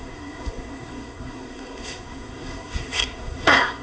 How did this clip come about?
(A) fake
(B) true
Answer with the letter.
A